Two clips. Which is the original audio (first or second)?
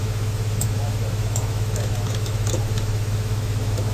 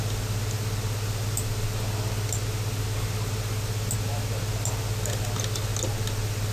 second